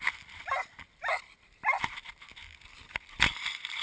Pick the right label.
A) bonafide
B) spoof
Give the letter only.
A